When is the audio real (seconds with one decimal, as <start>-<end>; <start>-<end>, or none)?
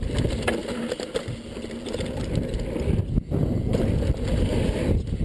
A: 0.0-5.2